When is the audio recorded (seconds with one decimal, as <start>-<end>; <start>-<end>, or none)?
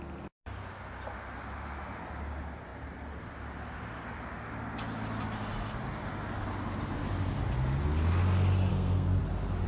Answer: 0.0-8.7; 9.2-9.7